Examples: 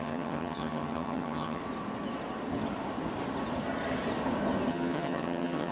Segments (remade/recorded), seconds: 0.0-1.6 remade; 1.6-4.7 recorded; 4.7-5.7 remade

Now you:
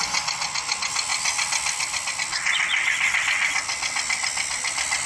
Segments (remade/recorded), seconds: 0.0-5.1 recorded

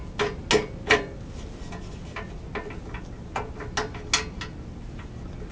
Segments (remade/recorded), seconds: 0.0-5.5 recorded

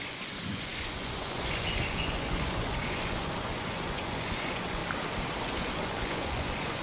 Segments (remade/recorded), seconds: 0.0-4.8 remade; 4.8-5.4 recorded; 5.4-6.8 remade

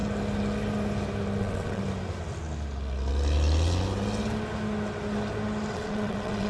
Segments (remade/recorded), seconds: 0.0-1.4 recorded; 1.4-1.8 remade; 1.8-5.7 recorded; 5.7-6.5 remade

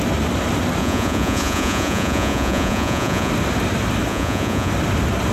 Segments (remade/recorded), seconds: 0.0-0.8 recorded; 0.8-3.3 remade; 3.3-4.1 recorded; 4.1-4.7 remade; 4.7-5.3 recorded